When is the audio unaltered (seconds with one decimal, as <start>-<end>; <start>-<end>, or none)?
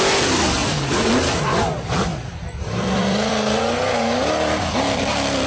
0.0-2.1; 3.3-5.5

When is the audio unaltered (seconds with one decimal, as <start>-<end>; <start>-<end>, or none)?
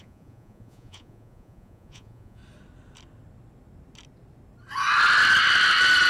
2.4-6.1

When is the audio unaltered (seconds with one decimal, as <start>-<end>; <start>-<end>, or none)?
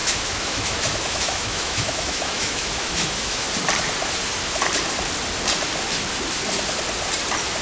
3.5-7.6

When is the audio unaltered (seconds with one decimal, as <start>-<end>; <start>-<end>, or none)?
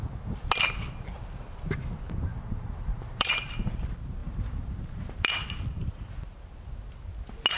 0.0-2.3; 3.3-4.2; 5.6-7.6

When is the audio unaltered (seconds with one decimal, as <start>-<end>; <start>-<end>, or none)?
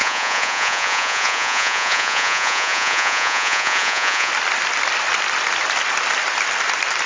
4.3-7.1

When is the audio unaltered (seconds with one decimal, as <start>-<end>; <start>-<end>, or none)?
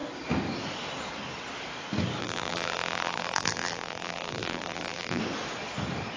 0.0-2.2; 5.2-6.2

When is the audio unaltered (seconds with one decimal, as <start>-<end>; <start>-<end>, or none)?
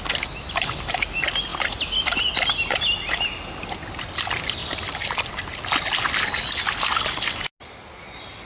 0.0-8.4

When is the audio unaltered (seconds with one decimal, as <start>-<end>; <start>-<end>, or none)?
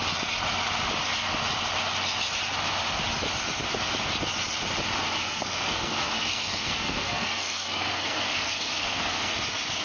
0.0-5.2; 9.3-9.8